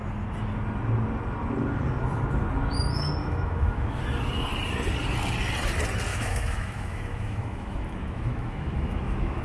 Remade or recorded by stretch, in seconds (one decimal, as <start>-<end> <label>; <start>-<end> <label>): 0.0-3.2 recorded; 3.2-4.0 remade; 4.0-6.1 recorded; 6.1-9.4 remade